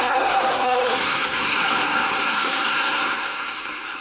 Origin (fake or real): fake